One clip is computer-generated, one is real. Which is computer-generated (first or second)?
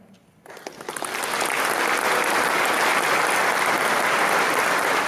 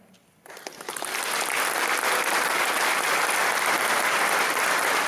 second